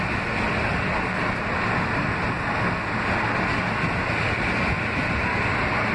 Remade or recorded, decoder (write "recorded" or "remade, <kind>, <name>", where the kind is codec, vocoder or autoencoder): recorded